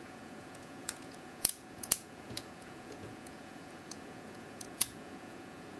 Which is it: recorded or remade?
remade